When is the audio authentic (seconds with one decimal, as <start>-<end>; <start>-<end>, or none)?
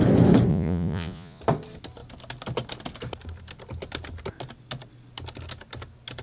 0.0-0.5; 1.4-6.2